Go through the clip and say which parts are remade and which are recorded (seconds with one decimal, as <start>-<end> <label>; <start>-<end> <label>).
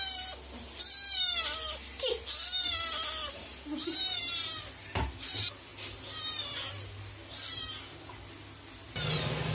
0.0-9.5 recorded